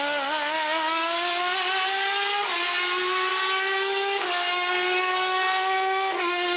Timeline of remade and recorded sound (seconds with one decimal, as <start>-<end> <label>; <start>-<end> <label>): 0.0-3.3 recorded; 3.3-6.6 remade